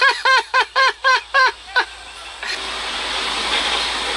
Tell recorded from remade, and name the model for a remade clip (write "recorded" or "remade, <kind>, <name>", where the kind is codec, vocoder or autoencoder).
recorded